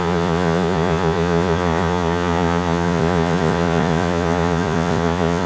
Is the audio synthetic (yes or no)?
yes